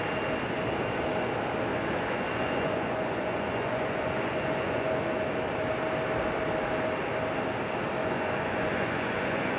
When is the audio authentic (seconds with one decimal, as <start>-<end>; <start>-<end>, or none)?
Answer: 0.0-1.7; 5.0-8.0